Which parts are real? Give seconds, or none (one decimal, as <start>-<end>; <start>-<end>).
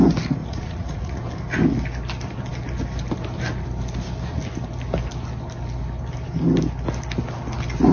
0.0-0.4; 1.2-7.9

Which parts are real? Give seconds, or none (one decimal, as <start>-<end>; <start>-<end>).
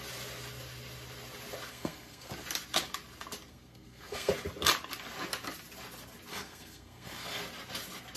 0.0-1.7; 2.3-3.5; 4.3-6.3; 7.4-8.2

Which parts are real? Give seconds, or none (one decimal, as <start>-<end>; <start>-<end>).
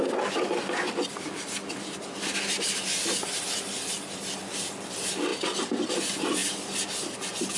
0.0-7.6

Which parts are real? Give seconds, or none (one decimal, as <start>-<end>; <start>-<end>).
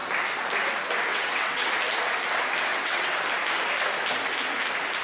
0.0-1.1; 1.7-2.7; 3.2-5.0